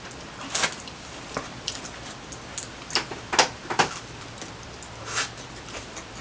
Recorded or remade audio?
recorded